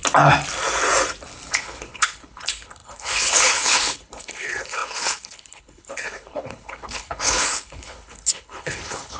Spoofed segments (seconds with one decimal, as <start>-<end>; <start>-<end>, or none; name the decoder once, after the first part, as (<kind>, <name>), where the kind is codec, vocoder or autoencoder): 1.5-9.2 (codec, HILCodec)